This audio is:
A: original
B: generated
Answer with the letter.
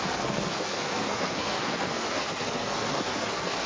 B